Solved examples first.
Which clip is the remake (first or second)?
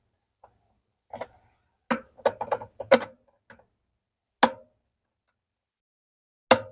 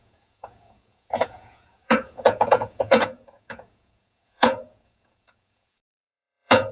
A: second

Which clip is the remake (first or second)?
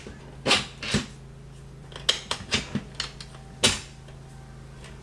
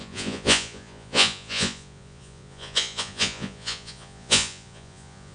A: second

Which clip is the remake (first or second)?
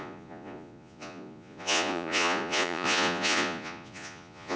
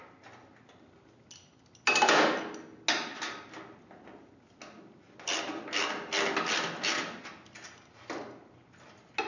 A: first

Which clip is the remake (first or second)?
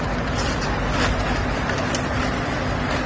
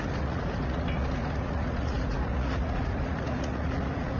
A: second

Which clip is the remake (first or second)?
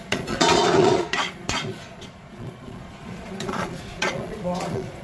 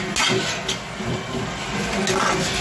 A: first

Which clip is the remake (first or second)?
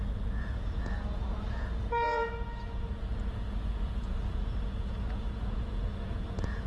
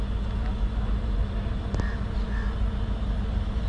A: first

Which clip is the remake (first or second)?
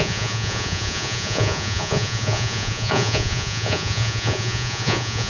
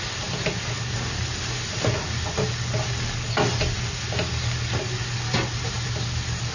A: first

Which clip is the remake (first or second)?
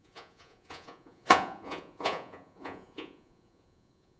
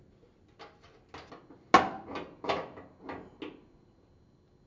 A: first